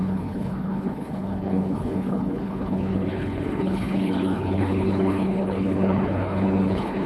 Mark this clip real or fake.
fake